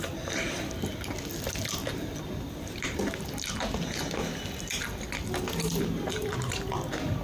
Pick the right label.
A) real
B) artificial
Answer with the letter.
A